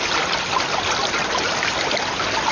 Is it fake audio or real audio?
real